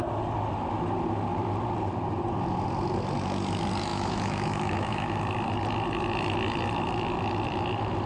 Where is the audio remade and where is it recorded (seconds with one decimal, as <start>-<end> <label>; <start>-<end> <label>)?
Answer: 0.0-3.9 recorded; 3.9-5.2 remade; 5.2-8.1 recorded